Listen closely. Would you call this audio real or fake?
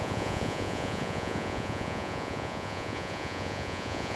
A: fake